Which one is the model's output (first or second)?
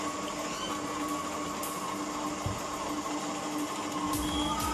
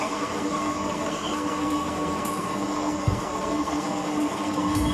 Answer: second